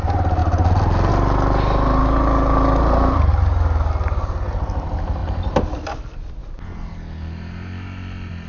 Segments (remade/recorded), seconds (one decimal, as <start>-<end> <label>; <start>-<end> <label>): 0.0-2.0 recorded; 2.0-2.8 remade; 2.8-3.3 recorded; 3.3-3.9 remade; 3.9-8.5 recorded